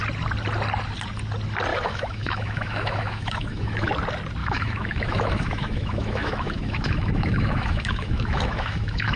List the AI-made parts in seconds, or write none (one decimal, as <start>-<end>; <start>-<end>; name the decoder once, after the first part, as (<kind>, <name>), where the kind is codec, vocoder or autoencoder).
1.7-3.9 (autoencoder, DAC-VAE); 4.4-9.2